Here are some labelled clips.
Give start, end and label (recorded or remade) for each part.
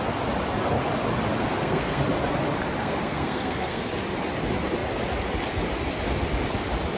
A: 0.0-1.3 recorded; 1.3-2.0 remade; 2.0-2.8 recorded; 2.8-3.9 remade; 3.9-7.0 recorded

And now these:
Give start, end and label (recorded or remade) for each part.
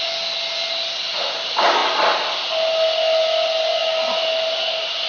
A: 0.0-5.1 recorded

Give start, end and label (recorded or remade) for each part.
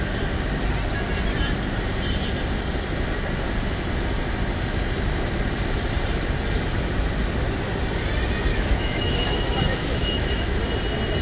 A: 0.0-8.5 recorded; 8.5-10.6 remade; 10.6-11.2 recorded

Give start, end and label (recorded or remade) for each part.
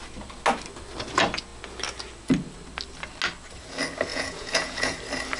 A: 0.0-4.1 recorded; 4.1-5.0 remade; 5.0-5.4 recorded